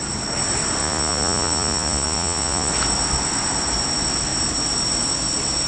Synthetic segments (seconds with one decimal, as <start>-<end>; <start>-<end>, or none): 0.8-2.7